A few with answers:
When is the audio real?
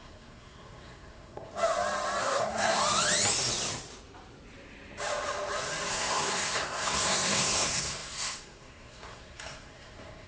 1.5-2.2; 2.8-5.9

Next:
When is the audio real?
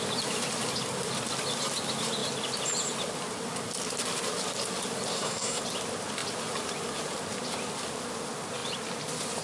0.0-5.1; 5.6-9.4